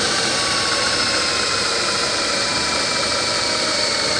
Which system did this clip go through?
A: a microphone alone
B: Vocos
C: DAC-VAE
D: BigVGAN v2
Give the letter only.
D